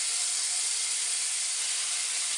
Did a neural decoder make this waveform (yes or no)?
no